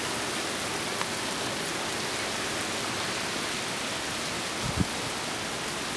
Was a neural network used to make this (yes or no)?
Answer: no